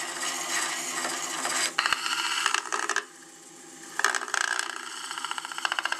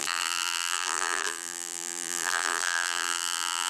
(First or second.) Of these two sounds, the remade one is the second